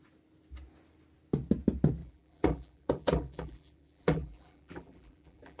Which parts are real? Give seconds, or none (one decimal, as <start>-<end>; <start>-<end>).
0.0-2.0